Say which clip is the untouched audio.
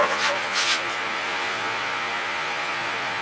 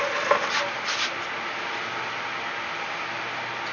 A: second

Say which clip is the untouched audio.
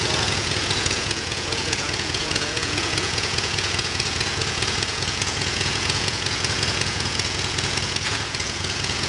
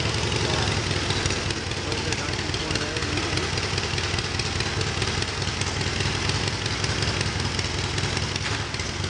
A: second